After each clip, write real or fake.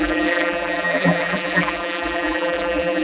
fake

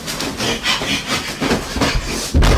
real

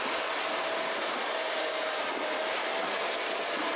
fake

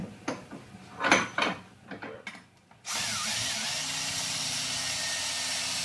real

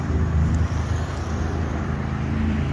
fake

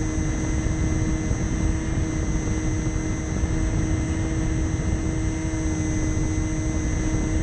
real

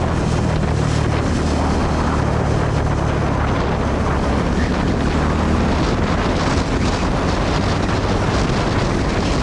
real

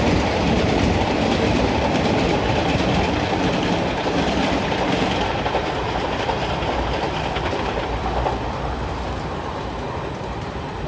fake